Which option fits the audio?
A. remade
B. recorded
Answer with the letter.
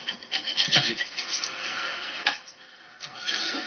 A